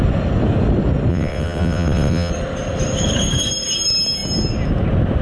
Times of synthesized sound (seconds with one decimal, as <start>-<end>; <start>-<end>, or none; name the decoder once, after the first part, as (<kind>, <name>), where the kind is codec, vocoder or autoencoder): 1.1-2.3 (vocoder, WaveNeXt)